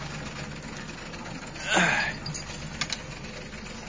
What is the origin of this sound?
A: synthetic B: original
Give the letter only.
B